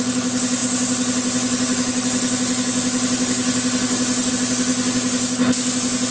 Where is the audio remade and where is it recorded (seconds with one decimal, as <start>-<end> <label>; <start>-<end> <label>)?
0.0-6.1 recorded